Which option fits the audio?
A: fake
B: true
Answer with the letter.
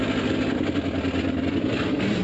B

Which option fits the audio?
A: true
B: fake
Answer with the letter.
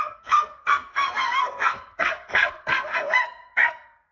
B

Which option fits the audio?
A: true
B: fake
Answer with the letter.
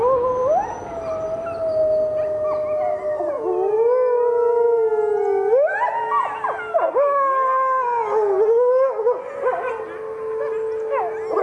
A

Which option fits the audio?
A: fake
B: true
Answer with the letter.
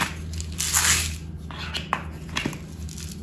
B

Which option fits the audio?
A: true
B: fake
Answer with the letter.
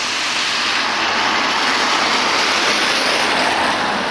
A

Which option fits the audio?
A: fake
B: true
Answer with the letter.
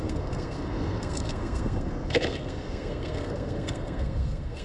A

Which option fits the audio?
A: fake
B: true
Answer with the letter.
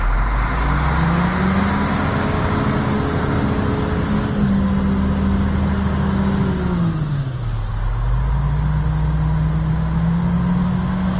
B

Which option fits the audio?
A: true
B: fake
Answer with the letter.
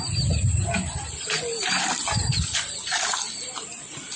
A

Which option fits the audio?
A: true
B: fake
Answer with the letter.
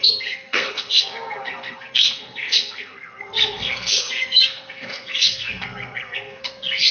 B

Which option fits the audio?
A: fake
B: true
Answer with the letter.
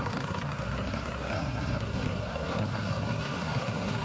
A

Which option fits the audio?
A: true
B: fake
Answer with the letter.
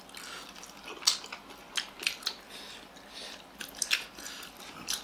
A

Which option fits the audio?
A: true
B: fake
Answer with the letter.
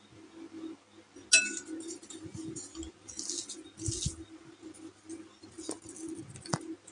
A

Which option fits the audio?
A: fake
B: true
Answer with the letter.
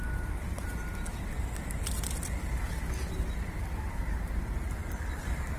B